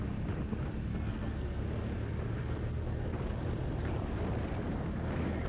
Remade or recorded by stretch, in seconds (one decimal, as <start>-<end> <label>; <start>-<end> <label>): 0.0-0.9 recorded; 0.9-1.6 remade; 1.6-5.5 recorded